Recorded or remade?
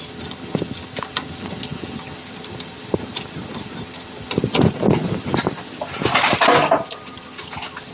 recorded